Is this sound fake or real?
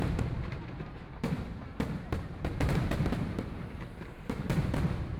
fake